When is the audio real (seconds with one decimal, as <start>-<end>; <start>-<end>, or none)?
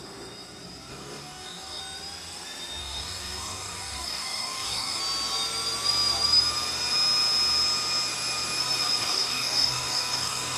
0.0-0.9; 1.8-2.8; 5.0-9.0